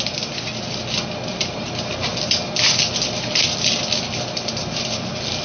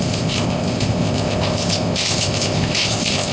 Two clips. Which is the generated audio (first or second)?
second